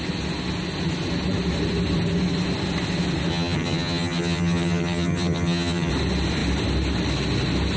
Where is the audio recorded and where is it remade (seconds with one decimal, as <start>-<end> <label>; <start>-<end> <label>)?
0.0-3.3 recorded; 3.3-5.9 remade; 5.9-7.8 recorded